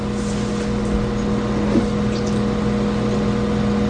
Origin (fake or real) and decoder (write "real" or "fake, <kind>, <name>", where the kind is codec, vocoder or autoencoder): real